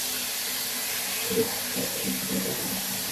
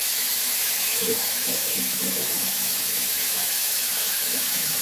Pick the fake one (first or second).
second